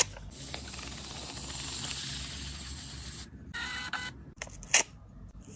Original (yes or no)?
yes